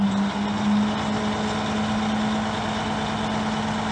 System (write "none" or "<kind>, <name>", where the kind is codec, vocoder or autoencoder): none